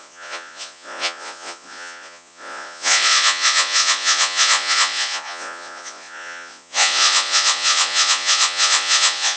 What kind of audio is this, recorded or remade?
remade